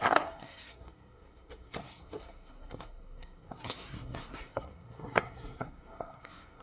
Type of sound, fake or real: fake